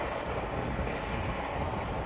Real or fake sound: real